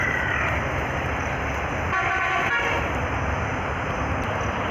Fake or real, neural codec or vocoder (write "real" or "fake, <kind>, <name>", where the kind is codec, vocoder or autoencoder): real